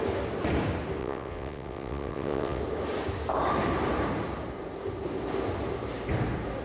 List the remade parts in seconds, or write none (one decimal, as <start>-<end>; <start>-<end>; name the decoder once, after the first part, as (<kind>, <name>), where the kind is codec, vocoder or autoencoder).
1.0-2.6 (vocoder, WaveNeXt)